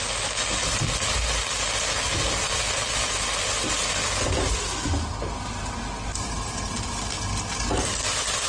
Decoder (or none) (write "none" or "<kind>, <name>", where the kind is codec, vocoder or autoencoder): none